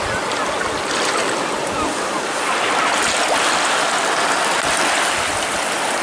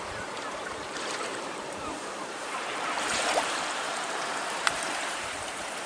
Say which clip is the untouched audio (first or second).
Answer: first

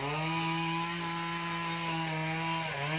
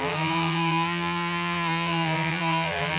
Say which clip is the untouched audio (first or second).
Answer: first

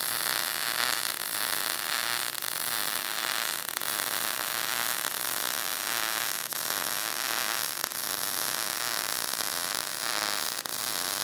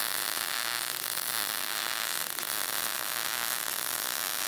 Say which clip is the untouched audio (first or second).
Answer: second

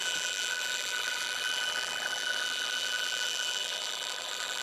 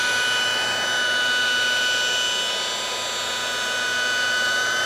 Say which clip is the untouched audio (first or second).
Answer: second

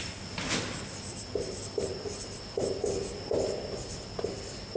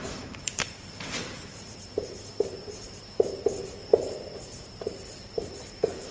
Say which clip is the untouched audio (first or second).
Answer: first